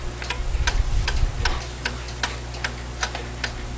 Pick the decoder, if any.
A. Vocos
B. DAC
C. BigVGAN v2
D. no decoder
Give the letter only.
D